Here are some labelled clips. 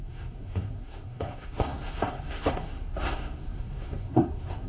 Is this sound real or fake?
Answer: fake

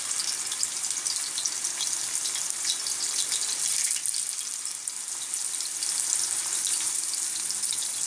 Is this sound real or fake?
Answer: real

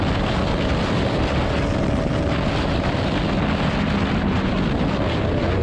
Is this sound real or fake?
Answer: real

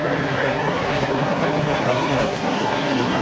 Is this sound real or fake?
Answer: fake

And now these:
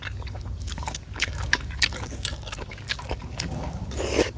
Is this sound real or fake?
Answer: fake